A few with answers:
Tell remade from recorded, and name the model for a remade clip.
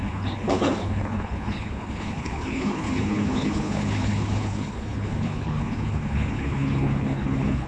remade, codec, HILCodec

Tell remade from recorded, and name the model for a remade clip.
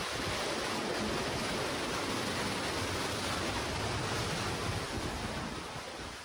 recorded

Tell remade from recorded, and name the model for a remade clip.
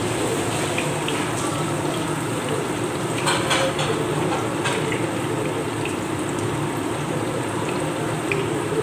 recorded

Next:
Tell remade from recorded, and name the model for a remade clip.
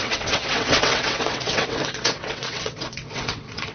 remade, vocoder, WaveNeXt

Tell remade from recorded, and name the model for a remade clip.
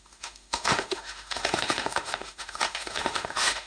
remade, autoencoder, DAC-VAE